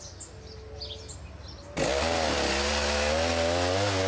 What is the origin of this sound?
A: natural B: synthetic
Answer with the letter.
A